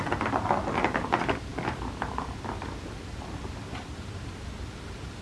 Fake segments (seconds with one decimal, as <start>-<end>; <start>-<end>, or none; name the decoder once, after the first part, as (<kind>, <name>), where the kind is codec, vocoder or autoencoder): none